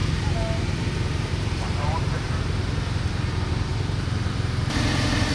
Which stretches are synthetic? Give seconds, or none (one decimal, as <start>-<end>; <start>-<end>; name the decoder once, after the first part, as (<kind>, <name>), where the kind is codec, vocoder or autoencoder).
0.0-2.4 (vocoder, BigVGAN v2); 3.7-4.8